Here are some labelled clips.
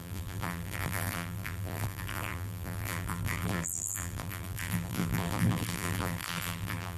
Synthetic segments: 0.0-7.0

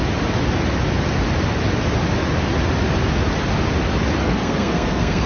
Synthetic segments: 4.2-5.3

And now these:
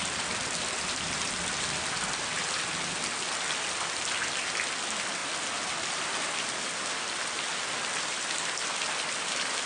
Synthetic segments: none

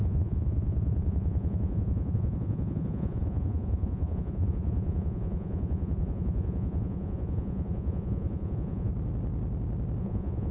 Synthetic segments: 0.0-8.9; 10.0-10.5

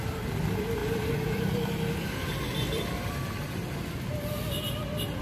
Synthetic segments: 0.8-3.9

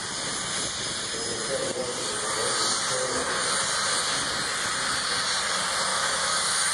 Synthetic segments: 5.9-6.7